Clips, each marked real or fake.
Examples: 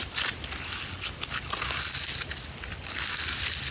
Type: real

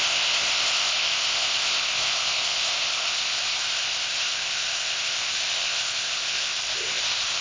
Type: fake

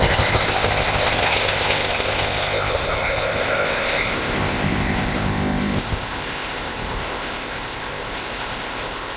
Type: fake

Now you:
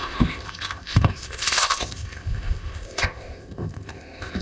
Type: fake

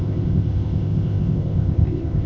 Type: fake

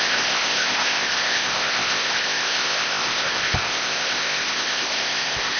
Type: fake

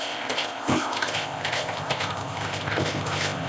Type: fake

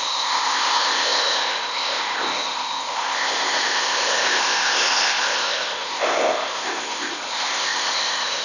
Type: fake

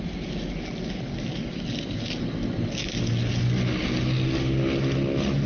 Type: real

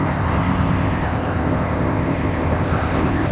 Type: fake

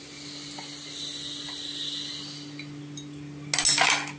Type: real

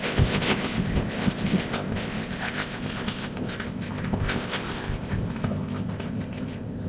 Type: fake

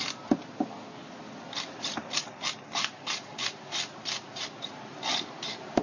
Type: real